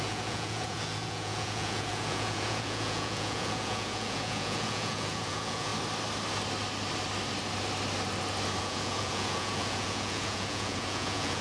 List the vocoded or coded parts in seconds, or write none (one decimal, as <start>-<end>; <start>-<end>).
0.0-5.7; 8.6-11.4